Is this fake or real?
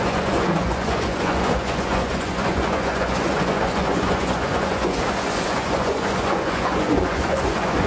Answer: fake